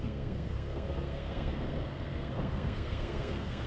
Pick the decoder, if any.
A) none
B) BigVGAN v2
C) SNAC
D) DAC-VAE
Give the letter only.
C